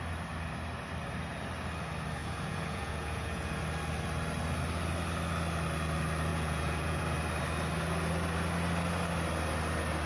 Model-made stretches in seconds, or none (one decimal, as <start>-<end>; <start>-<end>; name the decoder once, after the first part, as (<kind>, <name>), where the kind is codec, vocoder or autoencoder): 2.2-3.6 (vocoder, Vocos); 6.3-7.0